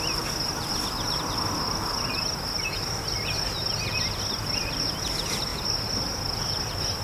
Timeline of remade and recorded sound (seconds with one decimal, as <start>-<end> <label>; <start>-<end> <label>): 0.0-7.0 recorded